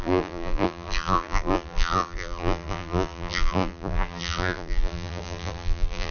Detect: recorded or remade remade